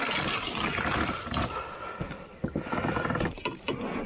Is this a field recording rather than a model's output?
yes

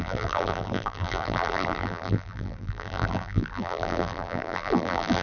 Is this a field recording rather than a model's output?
no